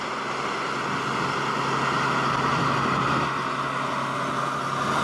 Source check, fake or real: real